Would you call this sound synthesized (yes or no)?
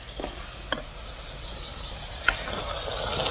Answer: no